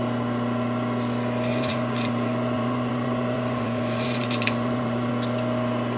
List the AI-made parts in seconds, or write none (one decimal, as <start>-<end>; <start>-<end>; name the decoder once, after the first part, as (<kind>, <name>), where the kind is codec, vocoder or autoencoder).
1.5-5.1 (vocoder, Vocos)